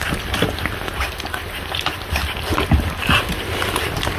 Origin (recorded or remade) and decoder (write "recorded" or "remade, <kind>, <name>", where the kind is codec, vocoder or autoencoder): recorded